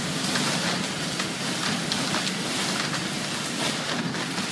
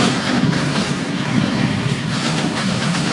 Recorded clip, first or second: first